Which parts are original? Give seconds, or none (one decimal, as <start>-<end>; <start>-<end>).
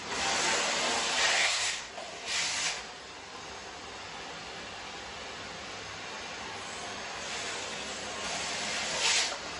0.0-1.3; 1.9-9.6